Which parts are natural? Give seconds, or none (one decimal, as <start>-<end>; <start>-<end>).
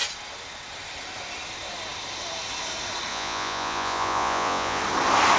0.0-3.1; 4.8-5.4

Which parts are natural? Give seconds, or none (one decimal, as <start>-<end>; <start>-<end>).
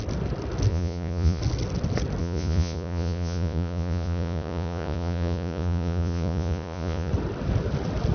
0.0-0.7; 1.4-2.2; 7.1-8.1